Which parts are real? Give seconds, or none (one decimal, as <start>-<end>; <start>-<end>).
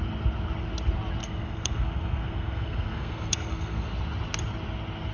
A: 0.0-1.2; 3.9-5.1